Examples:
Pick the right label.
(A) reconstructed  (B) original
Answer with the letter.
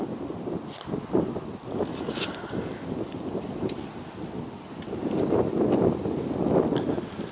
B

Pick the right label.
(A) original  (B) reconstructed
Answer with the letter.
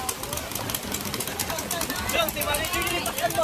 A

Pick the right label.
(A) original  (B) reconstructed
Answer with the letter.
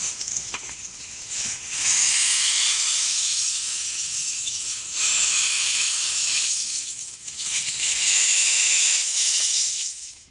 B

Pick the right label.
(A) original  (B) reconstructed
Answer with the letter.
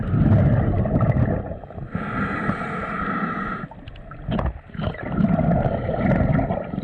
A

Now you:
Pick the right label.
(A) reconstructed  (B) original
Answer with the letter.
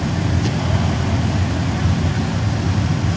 B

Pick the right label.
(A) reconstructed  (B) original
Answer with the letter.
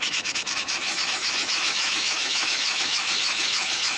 A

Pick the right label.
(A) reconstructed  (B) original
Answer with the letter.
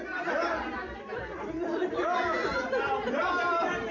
B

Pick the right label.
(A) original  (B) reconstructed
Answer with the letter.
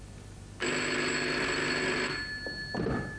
A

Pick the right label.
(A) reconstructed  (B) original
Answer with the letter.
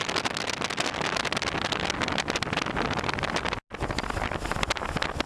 B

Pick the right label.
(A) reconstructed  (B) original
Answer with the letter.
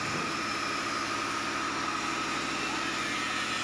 B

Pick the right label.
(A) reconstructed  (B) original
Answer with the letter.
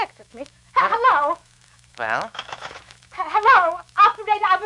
A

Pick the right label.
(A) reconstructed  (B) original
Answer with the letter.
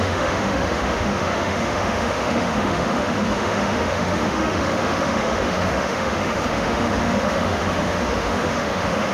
A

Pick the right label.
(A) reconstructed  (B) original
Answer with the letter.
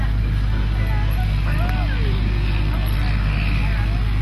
B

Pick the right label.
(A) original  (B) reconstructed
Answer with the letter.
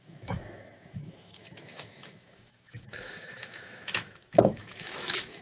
B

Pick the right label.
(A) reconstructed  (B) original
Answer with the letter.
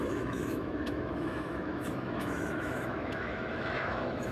A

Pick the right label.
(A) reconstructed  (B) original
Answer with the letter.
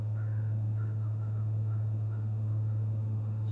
A